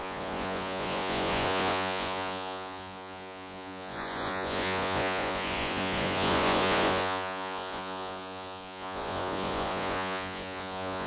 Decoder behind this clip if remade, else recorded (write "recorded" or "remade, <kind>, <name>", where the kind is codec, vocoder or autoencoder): remade, vocoder, Vocos